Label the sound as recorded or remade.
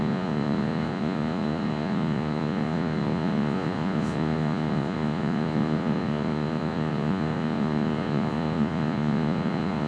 remade